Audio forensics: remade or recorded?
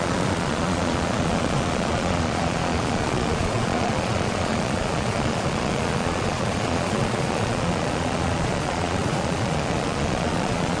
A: remade